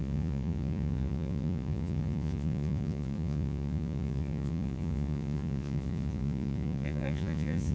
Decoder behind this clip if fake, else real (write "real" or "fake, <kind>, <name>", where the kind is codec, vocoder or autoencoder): fake, vocoder, Vocos